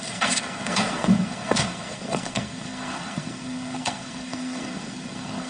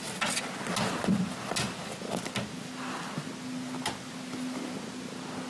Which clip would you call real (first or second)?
second